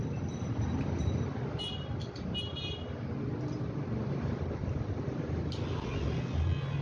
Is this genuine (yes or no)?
yes